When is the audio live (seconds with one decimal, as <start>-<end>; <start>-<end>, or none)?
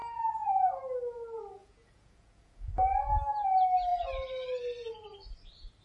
0.8-1.6; 2.7-5.8